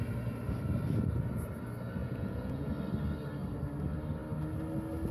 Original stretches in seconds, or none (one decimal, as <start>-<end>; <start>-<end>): 0.0-2.0; 2.7-5.1